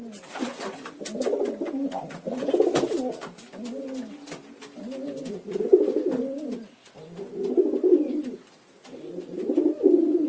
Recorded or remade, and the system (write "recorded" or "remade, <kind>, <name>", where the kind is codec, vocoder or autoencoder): recorded